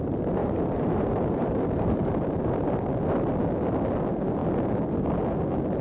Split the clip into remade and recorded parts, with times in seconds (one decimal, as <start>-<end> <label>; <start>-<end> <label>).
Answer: 0.0-0.4 recorded; 0.4-2.7 remade; 2.7-5.8 recorded